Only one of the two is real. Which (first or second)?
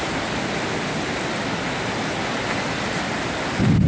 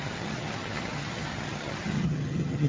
first